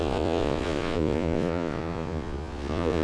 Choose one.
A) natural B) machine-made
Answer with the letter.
B